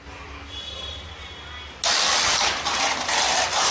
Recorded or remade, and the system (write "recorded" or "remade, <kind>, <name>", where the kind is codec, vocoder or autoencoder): recorded